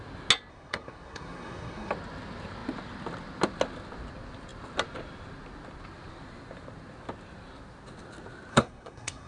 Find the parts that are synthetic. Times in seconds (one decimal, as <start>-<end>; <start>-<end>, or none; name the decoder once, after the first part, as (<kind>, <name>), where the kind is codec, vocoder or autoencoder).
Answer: 0.5-1.9 (codec, SNAC); 8.5-9.3